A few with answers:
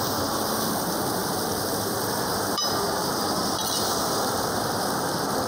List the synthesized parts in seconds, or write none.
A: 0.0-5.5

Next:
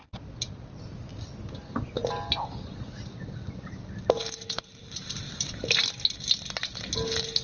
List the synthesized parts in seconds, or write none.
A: none

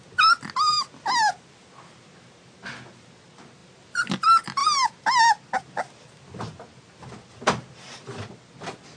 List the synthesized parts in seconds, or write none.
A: none